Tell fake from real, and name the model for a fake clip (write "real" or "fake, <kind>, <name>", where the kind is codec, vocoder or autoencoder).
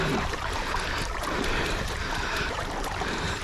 fake, vocoder, BigVGAN v2